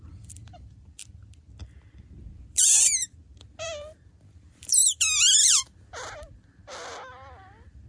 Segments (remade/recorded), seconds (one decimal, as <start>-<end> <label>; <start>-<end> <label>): 0.0-1.0 remade; 1.0-2.3 recorded; 2.3-7.9 remade